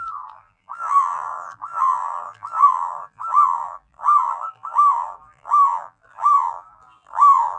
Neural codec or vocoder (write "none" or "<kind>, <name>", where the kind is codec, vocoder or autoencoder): vocoder, BigVGAN v2